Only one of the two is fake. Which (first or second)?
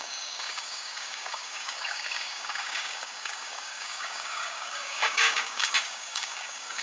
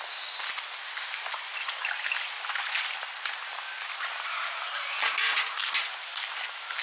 first